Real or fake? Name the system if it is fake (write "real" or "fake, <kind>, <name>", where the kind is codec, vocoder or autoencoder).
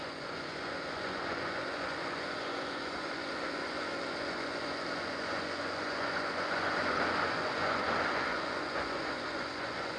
fake, vocoder, Vocos